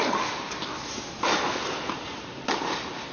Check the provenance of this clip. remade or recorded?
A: remade